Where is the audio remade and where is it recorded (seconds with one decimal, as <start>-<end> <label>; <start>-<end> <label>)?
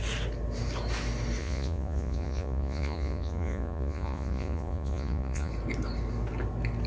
0.0-1.4 recorded; 1.4-5.5 remade; 5.5-6.9 recorded